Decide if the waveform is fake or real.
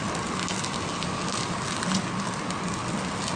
real